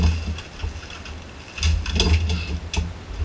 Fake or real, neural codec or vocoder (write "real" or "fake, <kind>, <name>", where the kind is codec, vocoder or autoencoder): real